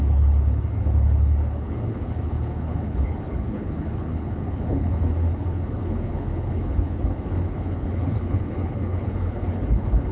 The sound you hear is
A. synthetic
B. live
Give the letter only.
A